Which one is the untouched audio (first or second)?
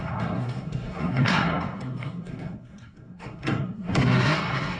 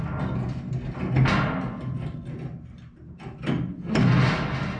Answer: second